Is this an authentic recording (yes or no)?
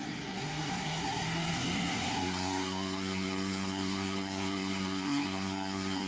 no